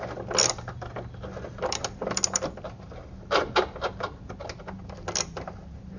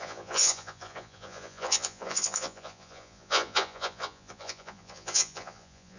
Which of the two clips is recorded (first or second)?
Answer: first